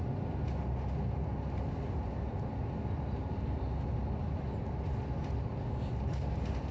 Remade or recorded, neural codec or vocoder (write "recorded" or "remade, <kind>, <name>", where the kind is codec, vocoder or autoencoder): recorded